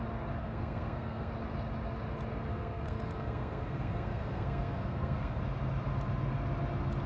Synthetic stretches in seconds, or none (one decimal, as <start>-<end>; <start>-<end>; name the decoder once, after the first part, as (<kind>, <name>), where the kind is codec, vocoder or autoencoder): 0.4-1.3 (codec, SNAC); 2.5-5.4